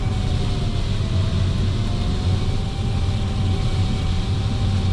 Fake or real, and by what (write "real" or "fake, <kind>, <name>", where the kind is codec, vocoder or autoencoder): real